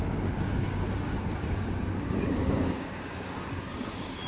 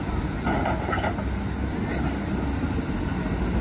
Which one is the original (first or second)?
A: second